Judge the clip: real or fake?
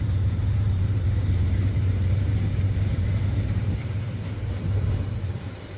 fake